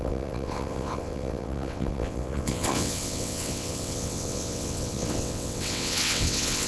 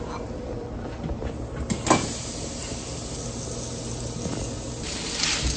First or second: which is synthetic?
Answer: first